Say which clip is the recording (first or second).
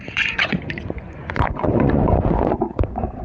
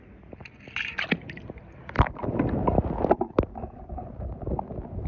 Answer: second